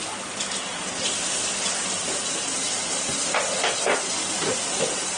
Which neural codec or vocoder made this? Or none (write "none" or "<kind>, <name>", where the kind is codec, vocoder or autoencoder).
none